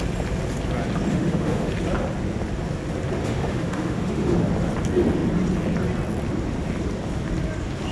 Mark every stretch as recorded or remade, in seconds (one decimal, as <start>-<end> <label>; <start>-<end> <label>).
0.0-1.1 recorded; 1.1-1.7 remade; 1.7-3.2 recorded; 3.2-4.4 remade; 4.4-7.9 recorded